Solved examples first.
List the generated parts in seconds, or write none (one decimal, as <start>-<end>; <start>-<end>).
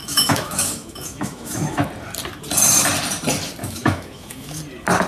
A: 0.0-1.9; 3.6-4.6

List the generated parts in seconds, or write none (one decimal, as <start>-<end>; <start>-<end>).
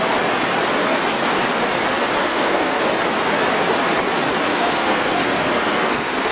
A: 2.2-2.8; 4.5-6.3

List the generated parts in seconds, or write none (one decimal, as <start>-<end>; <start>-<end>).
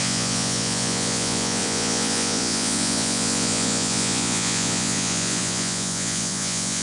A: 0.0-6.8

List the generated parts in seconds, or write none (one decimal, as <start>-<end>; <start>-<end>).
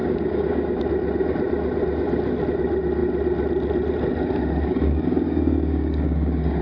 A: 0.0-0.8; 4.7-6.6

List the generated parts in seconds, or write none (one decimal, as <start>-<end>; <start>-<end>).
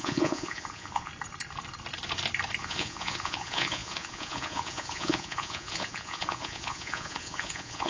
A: 0.0-1.1; 2.6-7.9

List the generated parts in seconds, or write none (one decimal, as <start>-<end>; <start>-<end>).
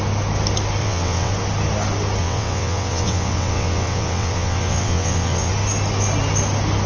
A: 0.8-1.3; 2.2-5.5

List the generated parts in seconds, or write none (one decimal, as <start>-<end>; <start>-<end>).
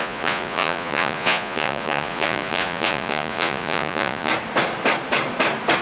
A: 0.0-4.3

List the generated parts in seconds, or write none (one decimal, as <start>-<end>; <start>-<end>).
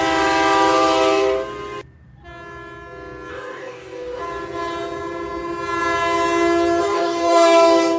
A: 3.3-4.2; 6.8-8.0